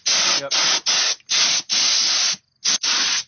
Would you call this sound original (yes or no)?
yes